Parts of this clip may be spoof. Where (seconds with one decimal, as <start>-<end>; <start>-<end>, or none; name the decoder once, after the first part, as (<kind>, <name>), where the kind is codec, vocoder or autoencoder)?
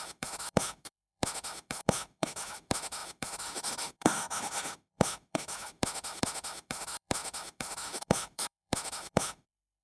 0.0-9.8 (autoencoder, DAC-VAE)